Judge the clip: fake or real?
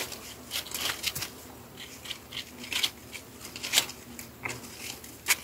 real